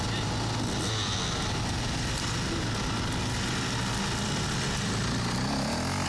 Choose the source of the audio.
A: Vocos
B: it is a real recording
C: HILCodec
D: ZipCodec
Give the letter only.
B